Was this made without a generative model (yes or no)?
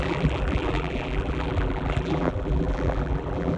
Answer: no